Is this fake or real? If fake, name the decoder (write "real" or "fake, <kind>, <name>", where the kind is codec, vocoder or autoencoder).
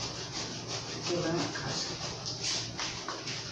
real